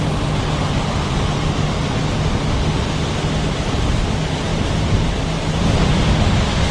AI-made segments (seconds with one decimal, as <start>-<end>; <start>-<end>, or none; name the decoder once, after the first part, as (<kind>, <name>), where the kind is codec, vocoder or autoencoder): none